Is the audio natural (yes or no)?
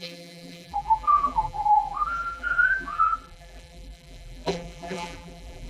no